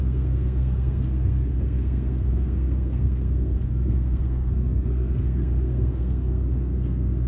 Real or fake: fake